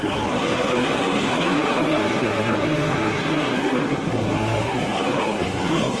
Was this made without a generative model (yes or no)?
no